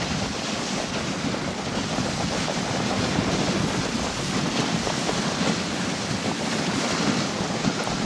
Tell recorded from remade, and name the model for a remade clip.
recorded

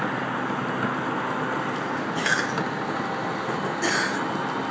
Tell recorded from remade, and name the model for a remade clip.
recorded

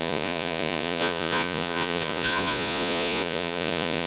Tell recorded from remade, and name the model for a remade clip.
remade, vocoder, Vocos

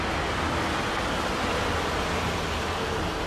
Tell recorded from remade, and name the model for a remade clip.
recorded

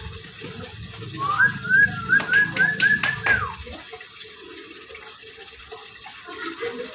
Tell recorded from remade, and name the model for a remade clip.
recorded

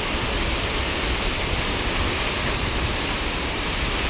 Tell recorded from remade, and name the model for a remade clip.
recorded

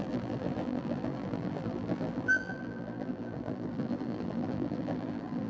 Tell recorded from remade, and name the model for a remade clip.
remade, vocoder, BigVGAN v2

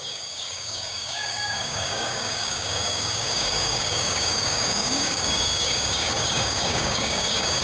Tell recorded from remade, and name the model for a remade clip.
remade, codec, DAC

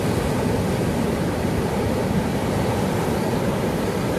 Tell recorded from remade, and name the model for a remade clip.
recorded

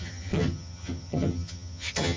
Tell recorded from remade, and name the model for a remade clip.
remade, vocoder, HiFi-GAN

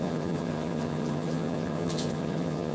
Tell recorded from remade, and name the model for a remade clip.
remade, vocoder, HiFi-GAN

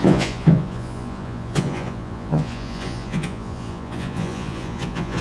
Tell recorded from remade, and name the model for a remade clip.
remade, vocoder, Vocos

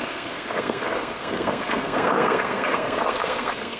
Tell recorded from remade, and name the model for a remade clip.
remade, codec, SNAC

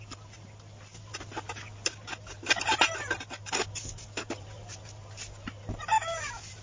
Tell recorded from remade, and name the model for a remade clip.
recorded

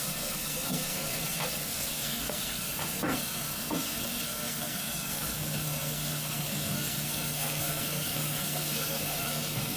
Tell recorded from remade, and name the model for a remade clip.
remade, codec, SNAC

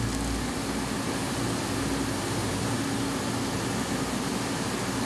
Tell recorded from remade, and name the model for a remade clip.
recorded